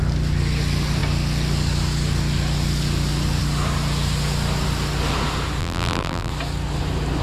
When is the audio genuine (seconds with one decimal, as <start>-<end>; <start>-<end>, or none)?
0.0-5.6; 6.3-7.2